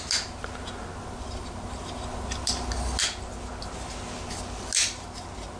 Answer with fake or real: real